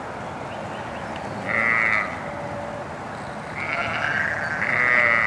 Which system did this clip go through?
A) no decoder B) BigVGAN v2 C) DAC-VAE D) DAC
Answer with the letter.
A